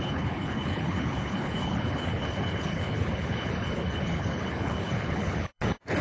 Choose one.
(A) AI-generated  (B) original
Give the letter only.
A